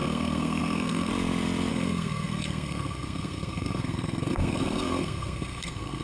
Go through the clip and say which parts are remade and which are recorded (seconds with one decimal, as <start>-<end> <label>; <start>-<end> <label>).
0.0-1.1 remade; 1.1-1.7 recorded; 1.7-6.0 remade